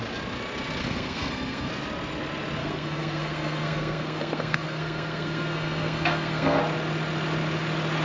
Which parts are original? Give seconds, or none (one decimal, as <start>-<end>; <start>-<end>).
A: 0.0-0.8; 1.7-2.6; 6.6-8.0